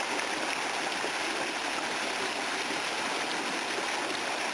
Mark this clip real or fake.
real